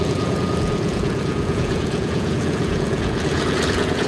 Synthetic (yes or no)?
yes